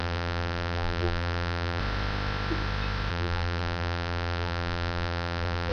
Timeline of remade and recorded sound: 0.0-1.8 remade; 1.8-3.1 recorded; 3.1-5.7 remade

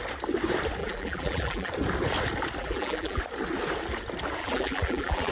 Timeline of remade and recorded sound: 0.0-0.8 recorded; 0.8-1.7 remade; 1.7-2.6 recorded; 2.6-3.2 remade; 3.2-4.4 recorded; 4.4-5.3 remade

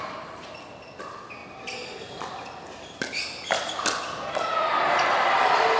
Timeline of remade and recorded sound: 0.0-5.8 recorded

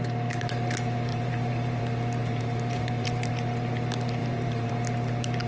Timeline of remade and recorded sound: 0.0-1.1 recorded; 1.1-1.8 remade; 1.8-2.2 recorded; 2.2-3.3 remade; 3.3-4.2 recorded; 4.2-4.7 remade; 4.7-5.5 recorded

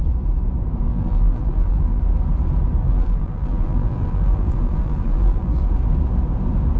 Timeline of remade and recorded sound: 0.0-0.9 recorded; 0.9-2.0 remade; 2.0-2.8 recorded; 2.8-5.6 remade; 5.6-6.8 recorded